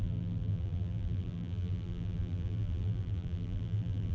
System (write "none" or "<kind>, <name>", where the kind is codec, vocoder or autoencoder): vocoder, BigVGAN v2